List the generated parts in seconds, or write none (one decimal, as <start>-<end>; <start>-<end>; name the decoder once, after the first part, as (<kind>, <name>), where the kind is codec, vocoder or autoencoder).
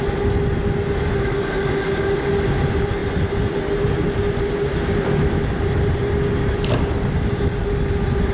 none